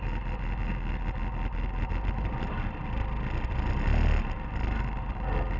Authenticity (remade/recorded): recorded